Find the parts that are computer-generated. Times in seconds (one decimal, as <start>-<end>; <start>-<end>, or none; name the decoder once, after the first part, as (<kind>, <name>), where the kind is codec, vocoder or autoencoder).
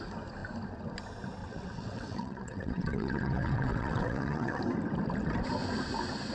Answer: 1.4-4.6 (vocoder, WaveNeXt)